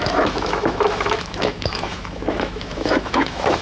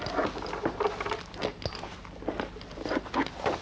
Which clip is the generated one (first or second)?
first